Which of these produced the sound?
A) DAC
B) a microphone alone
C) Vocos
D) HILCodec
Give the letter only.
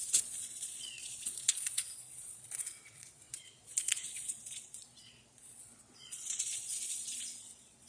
C